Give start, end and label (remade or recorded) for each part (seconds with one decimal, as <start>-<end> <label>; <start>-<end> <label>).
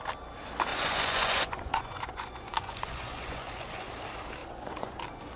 0.0-0.7 recorded; 0.7-3.9 remade; 3.9-4.4 recorded; 4.4-5.0 remade; 5.0-5.4 recorded